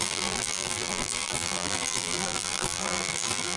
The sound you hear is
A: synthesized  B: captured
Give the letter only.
A